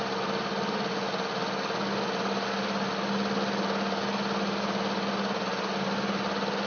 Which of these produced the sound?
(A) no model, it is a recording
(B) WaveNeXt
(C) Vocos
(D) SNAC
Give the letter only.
A